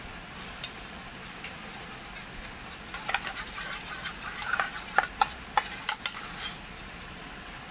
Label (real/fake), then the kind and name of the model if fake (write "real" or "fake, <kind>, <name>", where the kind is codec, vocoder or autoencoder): real